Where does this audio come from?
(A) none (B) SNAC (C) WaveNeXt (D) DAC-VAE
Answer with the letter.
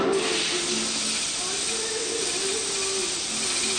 A